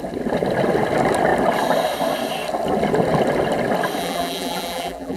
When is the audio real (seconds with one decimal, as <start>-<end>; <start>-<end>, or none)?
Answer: 0.0-4.0